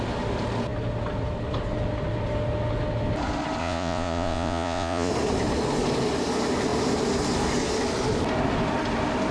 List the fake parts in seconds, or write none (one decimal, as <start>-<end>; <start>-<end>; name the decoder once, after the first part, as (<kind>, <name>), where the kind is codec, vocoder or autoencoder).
3.6-5.1 (vocoder, Vocos)